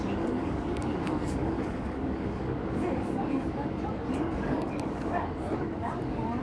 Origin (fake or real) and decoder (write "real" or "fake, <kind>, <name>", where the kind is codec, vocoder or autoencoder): fake, codec, DAC